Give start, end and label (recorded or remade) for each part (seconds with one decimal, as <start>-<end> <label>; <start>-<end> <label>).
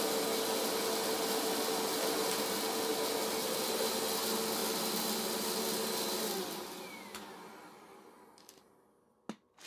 0.0-9.7 recorded